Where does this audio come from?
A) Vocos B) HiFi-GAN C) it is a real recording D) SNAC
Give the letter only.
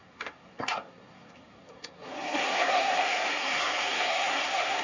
D